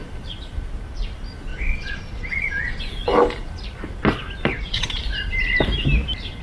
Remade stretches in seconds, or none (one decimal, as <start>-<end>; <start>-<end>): 1.5-2.8; 4.5-5.0